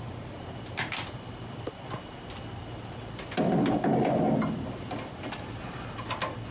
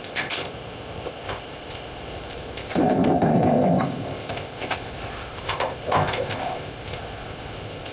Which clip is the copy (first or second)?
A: second